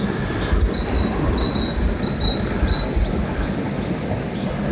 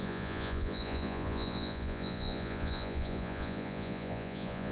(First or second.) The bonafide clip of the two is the first